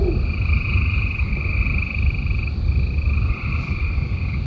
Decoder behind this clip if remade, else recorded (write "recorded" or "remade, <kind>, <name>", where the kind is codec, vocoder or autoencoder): recorded